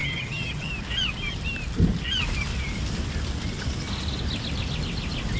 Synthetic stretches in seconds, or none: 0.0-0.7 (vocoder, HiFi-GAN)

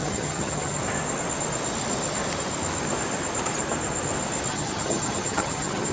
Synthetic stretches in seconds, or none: 0.0-0.8 (vocoder, HiFi-GAN); 4.5-5.9